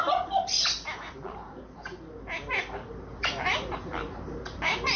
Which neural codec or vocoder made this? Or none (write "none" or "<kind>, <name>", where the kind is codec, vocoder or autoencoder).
vocoder, BigVGAN v2